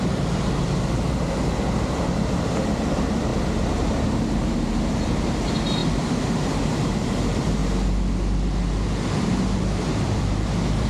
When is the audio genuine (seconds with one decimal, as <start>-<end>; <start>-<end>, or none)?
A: 3.3-4.1; 7.6-9.2